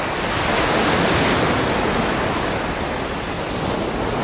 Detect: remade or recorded recorded